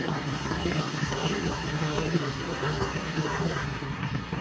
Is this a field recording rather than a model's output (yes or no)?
no